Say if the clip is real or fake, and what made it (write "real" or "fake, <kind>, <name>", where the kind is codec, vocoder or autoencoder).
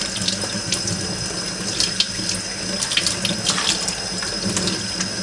real